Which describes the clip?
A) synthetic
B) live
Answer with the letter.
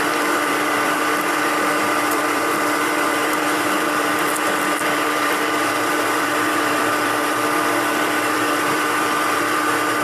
A